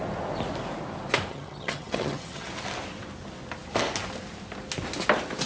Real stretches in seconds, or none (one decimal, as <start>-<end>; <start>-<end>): 0.0-1.3; 2.5-5.5